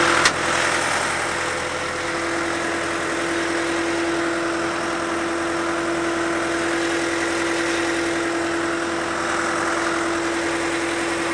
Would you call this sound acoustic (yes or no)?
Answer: yes